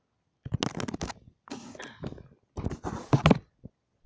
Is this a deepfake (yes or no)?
no